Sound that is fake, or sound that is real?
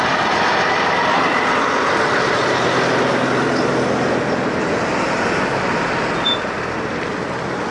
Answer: real